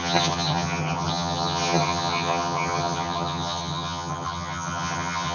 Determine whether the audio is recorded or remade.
remade